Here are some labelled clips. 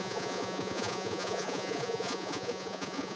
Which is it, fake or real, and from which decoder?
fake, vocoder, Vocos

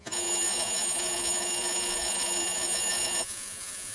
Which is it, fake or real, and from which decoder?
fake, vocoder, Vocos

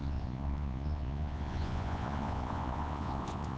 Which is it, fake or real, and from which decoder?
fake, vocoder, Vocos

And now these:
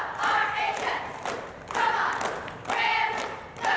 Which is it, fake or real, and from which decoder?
real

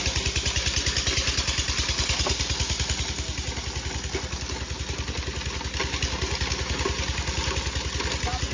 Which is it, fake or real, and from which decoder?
real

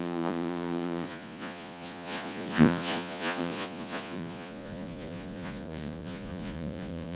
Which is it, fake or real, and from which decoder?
fake, vocoder, Vocos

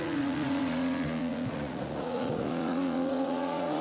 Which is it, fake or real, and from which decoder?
fake, vocoder, Vocos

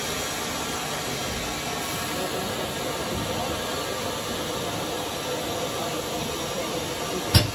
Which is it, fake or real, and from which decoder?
real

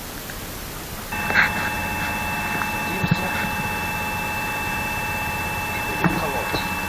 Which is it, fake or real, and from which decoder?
real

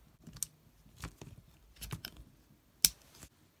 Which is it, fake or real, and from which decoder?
real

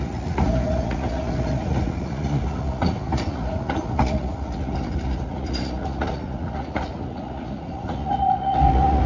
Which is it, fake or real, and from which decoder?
fake, vocoder, Vocos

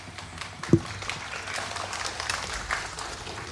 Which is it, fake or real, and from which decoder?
real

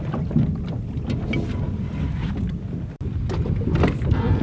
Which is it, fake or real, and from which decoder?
real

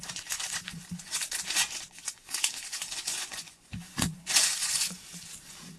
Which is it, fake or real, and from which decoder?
fake, vocoder, Vocos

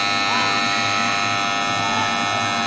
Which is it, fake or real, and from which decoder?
real